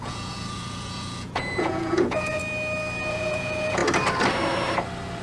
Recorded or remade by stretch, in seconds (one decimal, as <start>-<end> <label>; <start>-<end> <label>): 0.0-2.4 remade; 2.4-3.1 recorded; 3.1-3.8 remade; 3.8-5.2 recorded

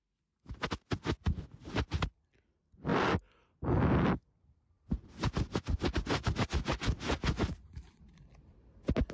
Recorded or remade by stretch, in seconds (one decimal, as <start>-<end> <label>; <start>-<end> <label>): 0.0-9.1 recorded